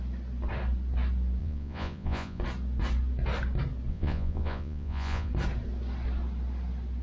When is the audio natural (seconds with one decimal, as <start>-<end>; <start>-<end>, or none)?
0.0-1.4; 2.4-3.9; 5.3-7.0